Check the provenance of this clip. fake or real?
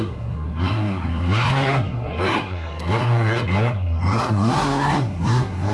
fake